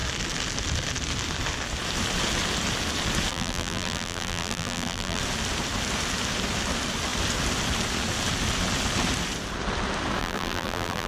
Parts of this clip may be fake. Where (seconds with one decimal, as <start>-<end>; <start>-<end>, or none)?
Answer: 3.3-5.2; 10.2-11.1